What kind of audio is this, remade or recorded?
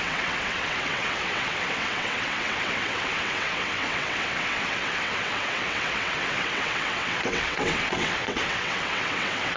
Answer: remade